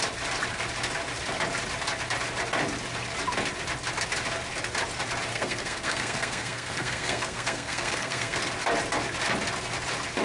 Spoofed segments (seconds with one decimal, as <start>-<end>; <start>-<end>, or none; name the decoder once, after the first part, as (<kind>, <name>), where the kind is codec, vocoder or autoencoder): 5.3-8.4 (codec, SNAC)